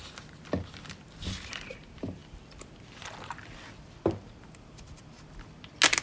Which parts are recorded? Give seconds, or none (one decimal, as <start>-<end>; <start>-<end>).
0.0-6.0